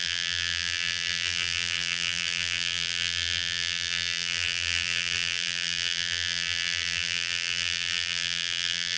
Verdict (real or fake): fake